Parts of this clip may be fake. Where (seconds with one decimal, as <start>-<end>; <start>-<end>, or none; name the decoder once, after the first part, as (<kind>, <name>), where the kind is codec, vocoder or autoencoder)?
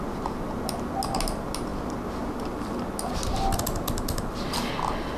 none